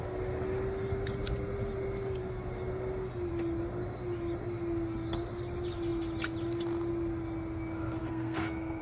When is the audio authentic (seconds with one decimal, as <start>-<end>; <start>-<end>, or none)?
0.0-8.0